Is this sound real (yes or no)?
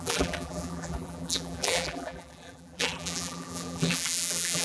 no